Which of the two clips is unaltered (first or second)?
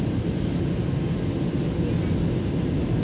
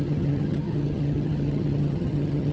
first